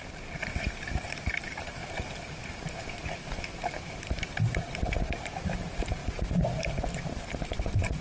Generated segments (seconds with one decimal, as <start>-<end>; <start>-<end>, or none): 0.0-6.0; 7.3-8.0